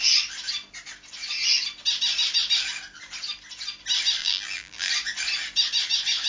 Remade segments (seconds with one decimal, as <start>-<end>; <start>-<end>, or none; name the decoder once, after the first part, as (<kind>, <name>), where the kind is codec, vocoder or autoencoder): 4.2-4.9 (vocoder, BigVGAN v2)